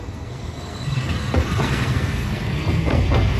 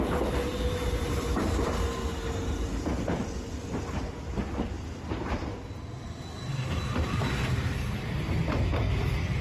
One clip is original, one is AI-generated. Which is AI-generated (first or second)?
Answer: first